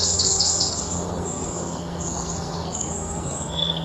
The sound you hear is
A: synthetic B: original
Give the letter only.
A